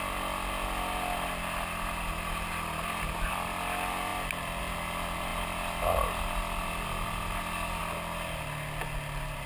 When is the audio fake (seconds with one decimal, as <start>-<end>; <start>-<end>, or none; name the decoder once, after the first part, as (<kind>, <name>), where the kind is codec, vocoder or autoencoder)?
none